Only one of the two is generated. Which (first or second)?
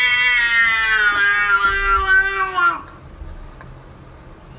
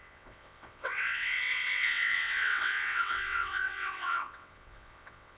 second